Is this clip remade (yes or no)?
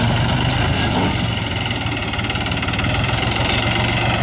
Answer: no